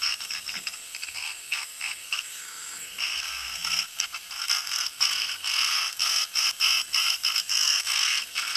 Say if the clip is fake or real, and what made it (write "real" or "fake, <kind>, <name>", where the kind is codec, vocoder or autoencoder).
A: fake, codec, SNAC